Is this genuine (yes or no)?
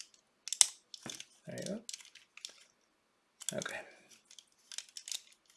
yes